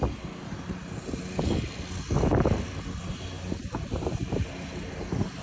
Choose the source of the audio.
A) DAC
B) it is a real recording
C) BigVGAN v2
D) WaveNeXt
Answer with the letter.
B